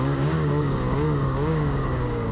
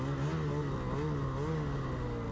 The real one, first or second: second